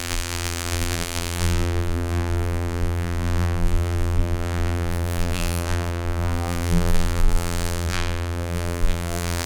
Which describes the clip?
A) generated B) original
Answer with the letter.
A